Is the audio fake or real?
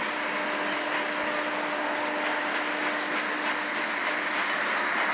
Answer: real